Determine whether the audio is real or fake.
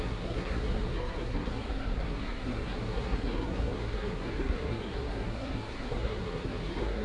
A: fake